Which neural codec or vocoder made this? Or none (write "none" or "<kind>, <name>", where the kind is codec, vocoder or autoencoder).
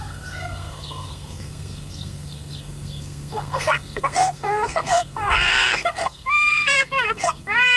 codec, SNAC